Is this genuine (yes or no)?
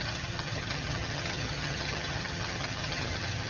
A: no